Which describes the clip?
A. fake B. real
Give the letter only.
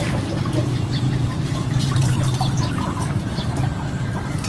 A